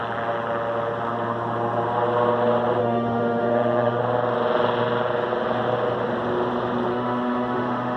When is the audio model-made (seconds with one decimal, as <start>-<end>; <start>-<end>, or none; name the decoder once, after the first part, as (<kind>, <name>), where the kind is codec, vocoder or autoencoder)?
2.8-4.0 (autoencoder, DAC-VAE); 6.9-8.0